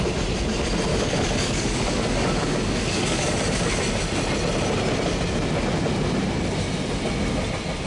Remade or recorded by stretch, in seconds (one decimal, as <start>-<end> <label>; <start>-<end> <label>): 0.0-0.9 recorded; 0.9-3.8 remade; 3.8-7.9 recorded